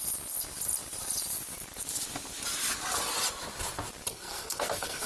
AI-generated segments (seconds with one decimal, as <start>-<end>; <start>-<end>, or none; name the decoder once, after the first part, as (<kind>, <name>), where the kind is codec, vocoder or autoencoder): 4.1-5.1 (codec, SNAC)